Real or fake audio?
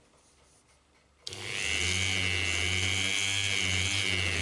real